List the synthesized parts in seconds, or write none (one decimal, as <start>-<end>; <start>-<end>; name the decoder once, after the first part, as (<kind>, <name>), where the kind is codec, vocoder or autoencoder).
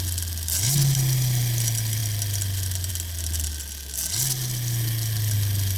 none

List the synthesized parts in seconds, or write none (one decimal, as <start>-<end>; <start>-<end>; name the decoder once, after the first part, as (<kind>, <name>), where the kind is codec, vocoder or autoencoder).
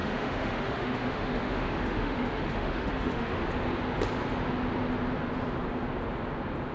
0.0-3.4 (autoencoder, DAC-VAE)